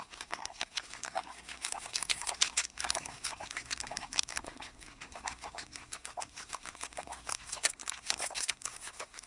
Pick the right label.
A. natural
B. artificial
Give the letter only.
B